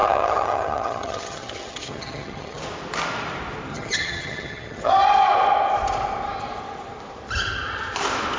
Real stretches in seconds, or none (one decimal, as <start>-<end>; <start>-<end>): 2.6-3.7; 4.9-8.4